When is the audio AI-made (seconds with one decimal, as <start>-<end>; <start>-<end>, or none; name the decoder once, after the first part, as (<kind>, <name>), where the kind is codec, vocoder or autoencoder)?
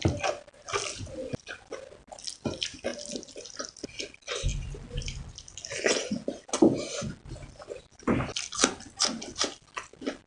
none